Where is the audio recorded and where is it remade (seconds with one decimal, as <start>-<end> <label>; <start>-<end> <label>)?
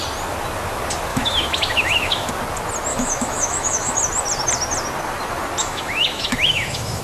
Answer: 0.0-1.1 recorded; 1.1-2.3 remade; 2.3-2.9 recorded; 2.9-4.0 remade; 4.0-5.6 recorded; 5.6-7.0 remade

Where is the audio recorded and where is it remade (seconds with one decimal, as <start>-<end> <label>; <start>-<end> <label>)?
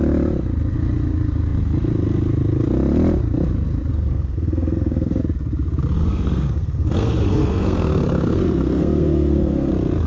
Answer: 0.0-3.9 recorded; 3.9-5.2 remade; 5.2-6.0 recorded; 6.0-9.7 remade; 9.7-10.1 recorded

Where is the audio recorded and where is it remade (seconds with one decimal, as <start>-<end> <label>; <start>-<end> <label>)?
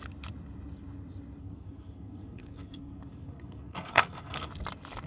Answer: 0.0-1.4 recorded; 1.4-4.5 remade; 4.5-5.1 recorded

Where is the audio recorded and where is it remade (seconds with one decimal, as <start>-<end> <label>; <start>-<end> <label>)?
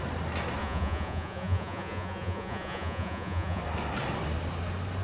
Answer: 0.0-0.6 recorded; 0.6-3.6 remade; 3.6-5.0 recorded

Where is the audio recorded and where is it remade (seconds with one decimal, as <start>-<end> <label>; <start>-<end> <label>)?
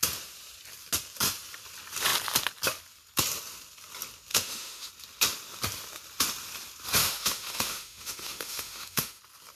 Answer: 0.0-4.3 recorded; 4.3-4.9 remade; 4.9-7.0 recorded; 7.0-9.2 remade; 9.2-9.6 recorded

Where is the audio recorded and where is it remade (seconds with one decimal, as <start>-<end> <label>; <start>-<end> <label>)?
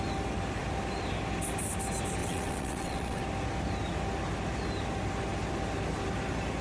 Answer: 0.0-2.2 recorded; 2.2-3.2 remade; 3.2-6.6 recorded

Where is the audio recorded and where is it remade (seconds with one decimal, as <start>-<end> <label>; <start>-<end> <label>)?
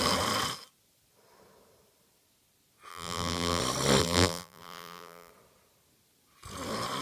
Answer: 0.0-2.9 recorded; 2.9-3.6 remade; 3.6-4.0 recorded; 4.0-5.3 remade; 5.3-7.0 recorded